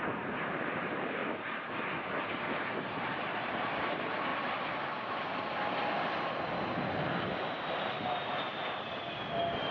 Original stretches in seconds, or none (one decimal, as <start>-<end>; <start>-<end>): 0.0-9.7